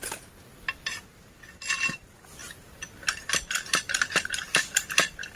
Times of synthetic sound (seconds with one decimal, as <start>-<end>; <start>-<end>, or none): none